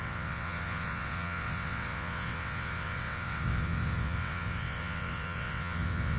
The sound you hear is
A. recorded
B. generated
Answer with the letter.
B